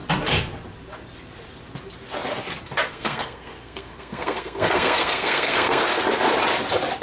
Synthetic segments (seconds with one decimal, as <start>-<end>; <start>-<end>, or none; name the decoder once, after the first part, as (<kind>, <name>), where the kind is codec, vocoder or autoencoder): 2.9-6.0 (codec, SNAC)